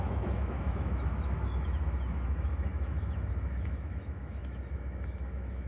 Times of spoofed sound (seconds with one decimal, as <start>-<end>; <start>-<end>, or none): 0.0-5.7